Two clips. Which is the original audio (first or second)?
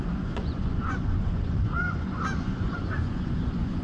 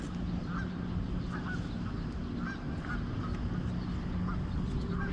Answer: second